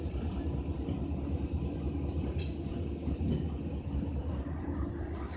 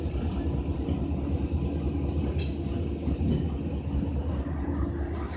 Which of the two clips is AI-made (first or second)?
first